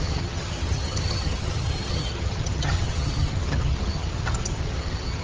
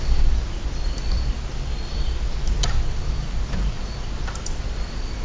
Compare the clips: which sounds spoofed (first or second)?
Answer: first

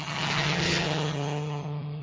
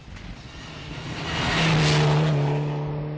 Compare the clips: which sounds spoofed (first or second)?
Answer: first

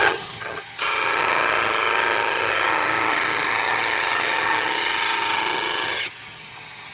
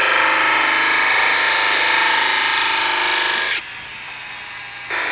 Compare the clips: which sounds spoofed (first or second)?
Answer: first